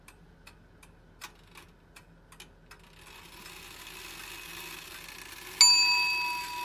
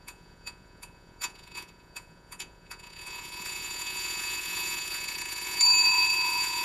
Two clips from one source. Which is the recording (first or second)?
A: first